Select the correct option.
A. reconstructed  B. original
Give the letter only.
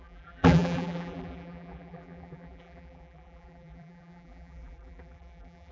A